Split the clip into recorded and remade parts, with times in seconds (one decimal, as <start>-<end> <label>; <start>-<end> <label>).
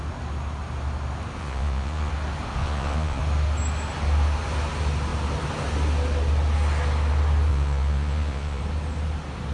0.0-1.4 recorded; 1.4-2.1 remade; 2.1-2.6 recorded; 2.6-3.2 remade; 3.2-7.5 recorded; 7.5-8.6 remade; 8.6-9.5 recorded